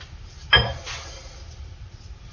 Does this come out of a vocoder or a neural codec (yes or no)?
no